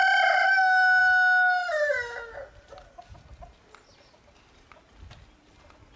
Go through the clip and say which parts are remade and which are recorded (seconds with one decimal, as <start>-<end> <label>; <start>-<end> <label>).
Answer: 0.0-6.0 recorded